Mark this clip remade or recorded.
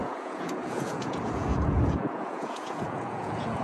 remade